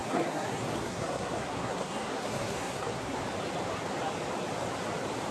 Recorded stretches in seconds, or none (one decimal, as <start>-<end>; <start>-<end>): 3.2-5.3